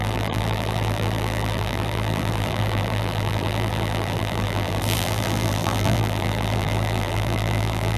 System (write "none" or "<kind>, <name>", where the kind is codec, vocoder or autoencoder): vocoder, BigVGAN v2